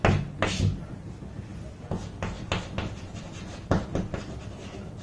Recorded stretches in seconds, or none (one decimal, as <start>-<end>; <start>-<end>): 0.0-5.0